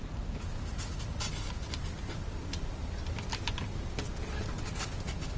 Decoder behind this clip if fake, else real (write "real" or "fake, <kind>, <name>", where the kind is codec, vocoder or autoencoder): real